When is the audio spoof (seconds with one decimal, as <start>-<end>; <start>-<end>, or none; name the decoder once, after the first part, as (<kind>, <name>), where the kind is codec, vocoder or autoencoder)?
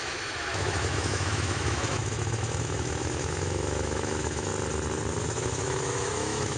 0.0-4.5 (autoencoder, DAC-VAE); 5.2-6.6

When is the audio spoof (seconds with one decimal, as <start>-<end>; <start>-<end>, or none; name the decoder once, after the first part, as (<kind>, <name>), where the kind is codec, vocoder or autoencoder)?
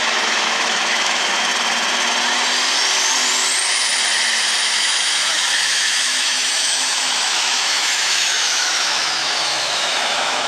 0.0-1.5 (autoencoder, DAC-VAE); 4.6-10.5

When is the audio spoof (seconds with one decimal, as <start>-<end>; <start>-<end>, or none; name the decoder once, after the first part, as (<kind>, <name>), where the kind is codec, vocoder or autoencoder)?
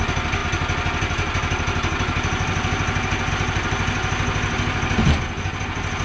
none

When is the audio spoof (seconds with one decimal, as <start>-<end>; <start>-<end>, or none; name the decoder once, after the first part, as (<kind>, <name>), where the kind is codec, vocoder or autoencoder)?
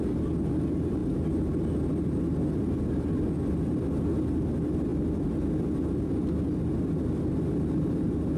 none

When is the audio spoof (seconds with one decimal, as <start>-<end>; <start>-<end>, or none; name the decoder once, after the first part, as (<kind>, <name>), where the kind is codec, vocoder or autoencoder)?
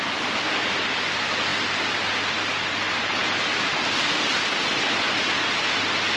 none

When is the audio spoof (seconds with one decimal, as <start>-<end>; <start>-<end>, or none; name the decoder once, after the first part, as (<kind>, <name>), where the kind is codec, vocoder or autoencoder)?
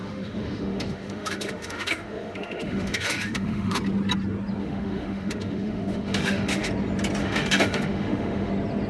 0.0-3.8 (autoencoder, DAC-VAE); 4.6-6.7; 7.2-8.5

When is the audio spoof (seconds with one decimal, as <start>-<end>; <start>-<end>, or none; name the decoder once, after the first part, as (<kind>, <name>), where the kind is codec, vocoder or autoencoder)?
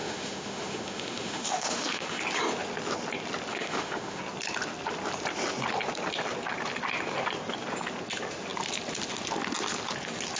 0.0-2.2 (autoencoder, DAC-VAE); 3.5-4.2